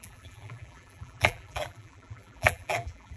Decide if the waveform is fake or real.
fake